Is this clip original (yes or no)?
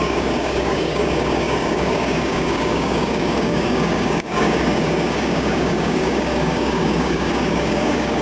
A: no